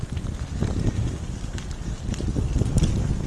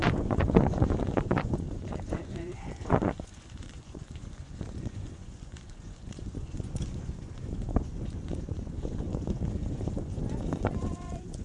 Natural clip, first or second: first